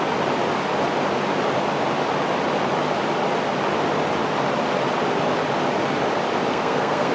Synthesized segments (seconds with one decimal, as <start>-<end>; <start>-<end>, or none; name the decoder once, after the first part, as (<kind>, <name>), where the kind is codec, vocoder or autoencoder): 6.5-7.1 (codec, SNAC)